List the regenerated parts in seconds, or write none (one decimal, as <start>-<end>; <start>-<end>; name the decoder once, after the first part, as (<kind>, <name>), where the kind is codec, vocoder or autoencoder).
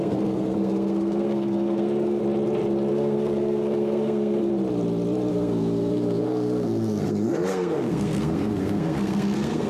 0.0-2.2 (codec, SNAC); 2.9-4.5; 5.3-9.7